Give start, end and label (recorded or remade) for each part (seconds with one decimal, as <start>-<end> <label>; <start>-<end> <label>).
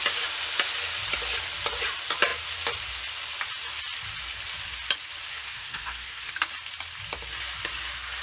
0.0-5.3 recorded; 5.3-6.3 remade; 6.3-8.2 recorded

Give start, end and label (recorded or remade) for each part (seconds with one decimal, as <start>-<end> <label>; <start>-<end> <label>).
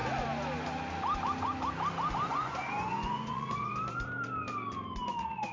0.0-2.3 recorded; 2.3-3.7 remade; 3.7-5.1 recorded; 5.1-5.5 remade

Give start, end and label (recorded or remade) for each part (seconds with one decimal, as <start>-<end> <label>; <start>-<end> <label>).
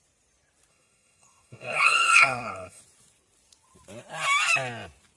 0.0-0.7 recorded; 0.7-2.8 remade; 2.8-5.2 recorded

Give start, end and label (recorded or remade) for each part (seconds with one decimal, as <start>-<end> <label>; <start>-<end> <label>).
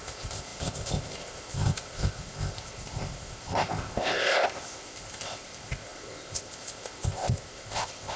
0.0-8.2 remade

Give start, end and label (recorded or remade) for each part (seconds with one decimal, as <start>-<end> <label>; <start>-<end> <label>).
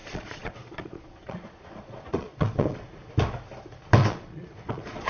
0.0-3.1 remade; 3.1-4.0 recorded; 4.0-5.1 remade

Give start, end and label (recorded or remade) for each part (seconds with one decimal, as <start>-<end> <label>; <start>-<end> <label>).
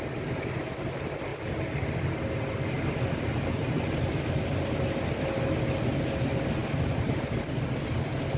0.0-8.4 recorded